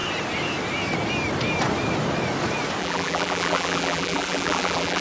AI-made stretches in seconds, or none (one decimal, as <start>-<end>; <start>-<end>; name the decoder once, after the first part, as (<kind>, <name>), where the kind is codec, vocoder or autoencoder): 2.8-5.0 (vocoder, BigVGAN v2)